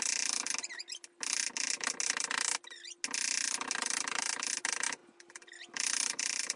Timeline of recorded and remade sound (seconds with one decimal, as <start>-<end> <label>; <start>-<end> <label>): 0.0-5.0 recorded; 5.0-6.6 remade